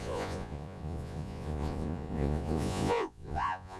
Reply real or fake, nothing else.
fake